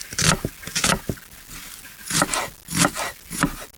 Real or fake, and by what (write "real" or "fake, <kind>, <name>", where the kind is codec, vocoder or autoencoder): real